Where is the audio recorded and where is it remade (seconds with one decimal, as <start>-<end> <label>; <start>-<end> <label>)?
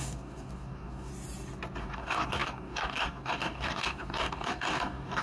0.0-1.1 remade; 1.1-1.8 recorded; 1.8-5.2 remade